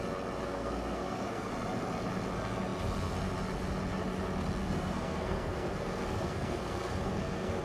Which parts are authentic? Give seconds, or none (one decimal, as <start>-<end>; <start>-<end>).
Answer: 0.0-0.4; 1.5-4.6